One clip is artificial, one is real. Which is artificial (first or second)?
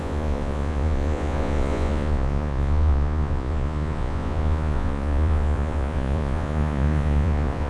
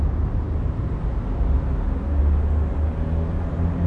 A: first